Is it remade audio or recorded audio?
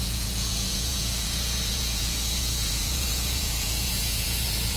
remade